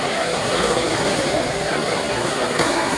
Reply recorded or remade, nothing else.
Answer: remade